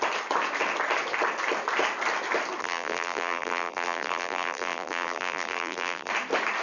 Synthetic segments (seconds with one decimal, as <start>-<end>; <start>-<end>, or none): 2.6-6.1